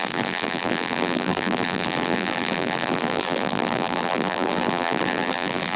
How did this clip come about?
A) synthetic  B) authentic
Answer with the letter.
A